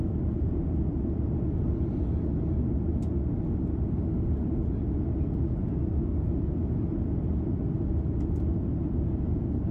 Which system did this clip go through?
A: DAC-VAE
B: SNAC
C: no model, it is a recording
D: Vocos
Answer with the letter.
C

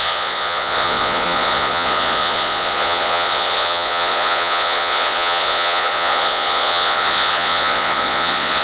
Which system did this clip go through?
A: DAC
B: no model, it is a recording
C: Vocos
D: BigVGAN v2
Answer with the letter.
C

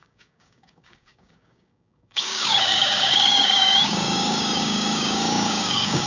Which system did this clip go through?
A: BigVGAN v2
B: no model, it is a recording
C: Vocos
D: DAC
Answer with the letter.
D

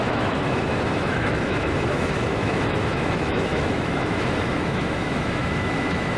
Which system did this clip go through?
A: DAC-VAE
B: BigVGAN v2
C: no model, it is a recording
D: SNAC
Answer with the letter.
A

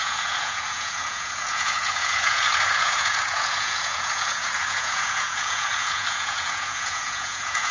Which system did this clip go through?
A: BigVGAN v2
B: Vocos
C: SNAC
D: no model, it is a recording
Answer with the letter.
B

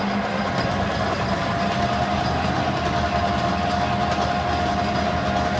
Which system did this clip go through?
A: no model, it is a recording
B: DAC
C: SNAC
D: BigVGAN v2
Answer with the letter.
A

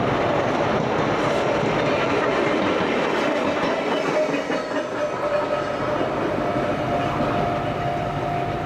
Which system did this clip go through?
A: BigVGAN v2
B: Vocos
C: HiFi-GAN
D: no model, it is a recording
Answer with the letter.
D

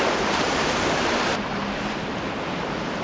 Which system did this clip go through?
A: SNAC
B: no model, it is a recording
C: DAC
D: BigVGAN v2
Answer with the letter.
D